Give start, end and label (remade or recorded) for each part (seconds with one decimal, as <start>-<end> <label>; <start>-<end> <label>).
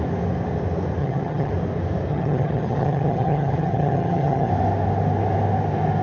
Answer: 0.0-1.0 recorded; 1.0-1.5 remade; 1.5-2.1 recorded; 2.1-4.5 remade; 4.5-6.0 recorded